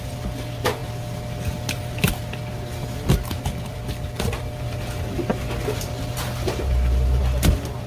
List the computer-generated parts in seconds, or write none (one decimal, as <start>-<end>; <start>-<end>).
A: none